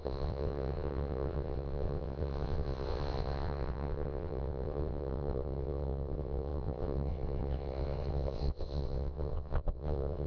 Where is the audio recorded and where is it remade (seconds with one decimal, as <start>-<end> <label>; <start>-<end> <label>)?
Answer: 0.0-10.3 remade